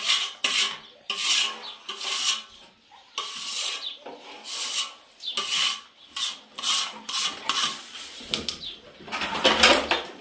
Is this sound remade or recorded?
recorded